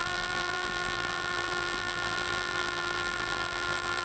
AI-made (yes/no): yes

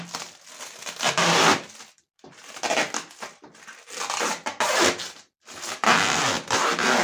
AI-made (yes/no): no